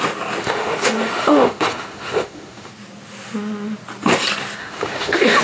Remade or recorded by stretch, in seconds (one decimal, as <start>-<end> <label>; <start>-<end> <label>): 0.0-0.4 recorded; 0.4-2.7 remade; 2.7-4.6 recorded; 4.6-5.4 remade